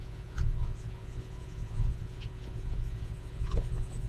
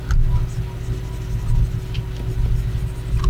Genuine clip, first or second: second